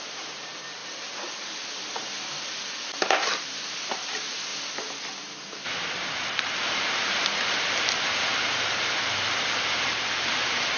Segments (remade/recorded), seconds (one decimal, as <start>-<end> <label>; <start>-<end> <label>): 0.0-0.8 remade; 0.8-3.4 recorded; 3.4-4.5 remade; 4.5-6.2 recorded; 6.2-10.8 remade